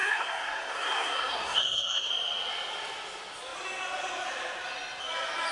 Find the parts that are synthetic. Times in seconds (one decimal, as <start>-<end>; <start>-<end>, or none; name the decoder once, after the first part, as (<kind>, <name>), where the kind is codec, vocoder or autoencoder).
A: 0.0-2.1 (codec, SNAC)